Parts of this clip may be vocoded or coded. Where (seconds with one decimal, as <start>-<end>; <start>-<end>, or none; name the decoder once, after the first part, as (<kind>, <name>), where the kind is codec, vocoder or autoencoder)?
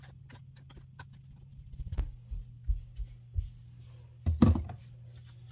none